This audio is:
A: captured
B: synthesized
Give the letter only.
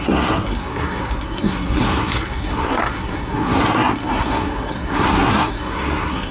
B